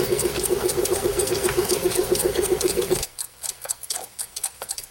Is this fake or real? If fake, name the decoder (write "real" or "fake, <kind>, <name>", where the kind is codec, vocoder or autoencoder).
fake, codec, SNAC